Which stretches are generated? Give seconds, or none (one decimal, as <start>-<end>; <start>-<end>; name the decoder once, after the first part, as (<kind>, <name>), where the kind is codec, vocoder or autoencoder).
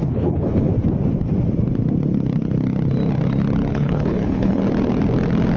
0.0-0.7 (codec, HILCodec); 3.7-4.6